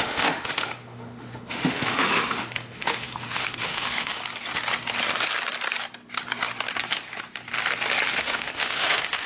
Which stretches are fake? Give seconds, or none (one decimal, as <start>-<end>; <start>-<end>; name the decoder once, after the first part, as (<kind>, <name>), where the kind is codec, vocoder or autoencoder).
0.0-4.2 (autoencoder, DAC-VAE); 8.2-9.3